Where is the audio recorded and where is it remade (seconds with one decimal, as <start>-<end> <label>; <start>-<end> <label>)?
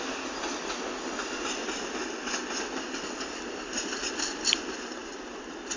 0.0-5.8 remade